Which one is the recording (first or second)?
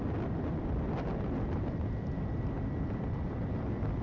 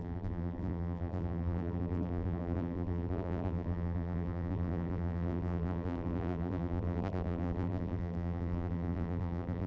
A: first